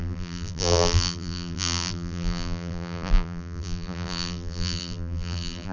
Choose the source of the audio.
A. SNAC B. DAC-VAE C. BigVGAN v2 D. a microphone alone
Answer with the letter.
C